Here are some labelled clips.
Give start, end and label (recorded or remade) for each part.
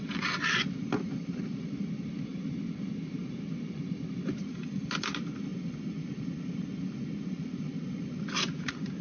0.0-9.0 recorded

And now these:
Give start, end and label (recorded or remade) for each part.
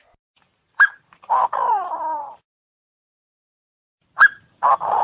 0.0-3.3 remade; 3.3-4.4 recorded; 4.4-5.0 remade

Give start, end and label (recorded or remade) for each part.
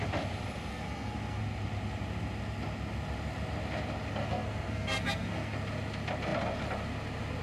0.0-0.7 recorded; 0.7-1.4 remade; 1.4-4.2 recorded; 4.2-5.6 remade; 5.6-7.4 recorded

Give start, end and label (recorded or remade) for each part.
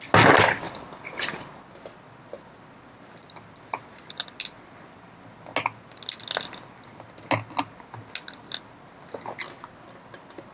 0.0-3.2 recorded; 3.2-4.2 remade; 4.2-10.5 recorded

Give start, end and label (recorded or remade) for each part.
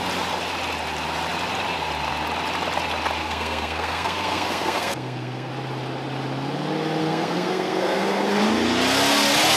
0.0-3.2 recorded; 3.2-5.5 remade; 5.5-7.0 recorded; 7.0-8.4 remade; 8.4-9.6 recorded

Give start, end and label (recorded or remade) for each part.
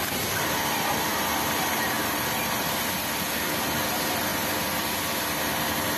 0.0-6.0 remade